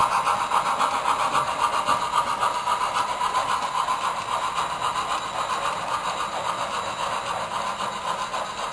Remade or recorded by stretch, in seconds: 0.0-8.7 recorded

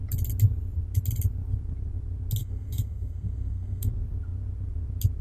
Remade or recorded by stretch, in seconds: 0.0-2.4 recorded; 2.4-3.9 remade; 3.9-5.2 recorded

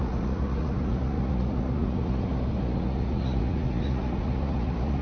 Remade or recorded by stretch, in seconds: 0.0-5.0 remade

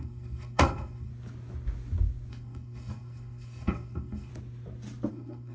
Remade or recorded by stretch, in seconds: 0.0-1.1 remade; 1.1-2.3 recorded; 2.3-4.3 remade; 4.3-5.1 recorded; 5.1-5.5 remade

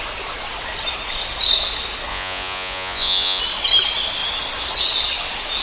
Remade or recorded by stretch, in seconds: 0.0-2.1 recorded; 2.1-3.4 remade; 3.4-5.6 recorded

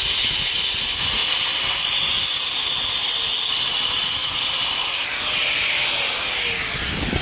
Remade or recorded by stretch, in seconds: 0.0-4.2 recorded; 4.2-5.2 remade; 5.2-7.2 recorded

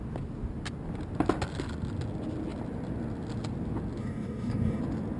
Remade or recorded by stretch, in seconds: 0.0-4.0 recorded; 4.0-4.8 remade; 4.8-5.2 recorded